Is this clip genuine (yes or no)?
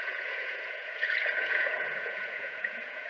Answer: no